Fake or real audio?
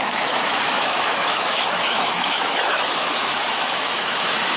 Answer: fake